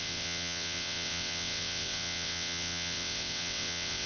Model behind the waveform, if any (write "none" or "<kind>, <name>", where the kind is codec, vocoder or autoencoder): vocoder, WaveNeXt